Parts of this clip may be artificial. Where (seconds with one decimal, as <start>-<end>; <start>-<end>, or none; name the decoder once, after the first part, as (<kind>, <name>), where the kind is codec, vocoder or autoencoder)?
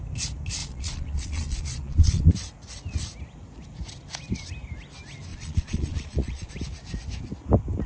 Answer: 0.6-2.3 (vocoder, Vocos); 5.3-6.5